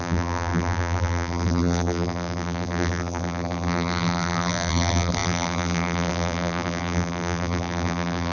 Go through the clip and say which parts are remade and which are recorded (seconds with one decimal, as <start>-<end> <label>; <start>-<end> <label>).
0.0-8.3 remade